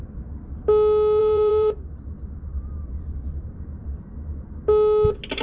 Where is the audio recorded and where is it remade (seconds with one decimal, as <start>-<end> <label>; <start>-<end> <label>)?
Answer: 0.0-1.2 recorded; 1.2-1.9 remade; 1.9-2.5 recorded; 2.5-4.1 remade; 4.1-5.4 recorded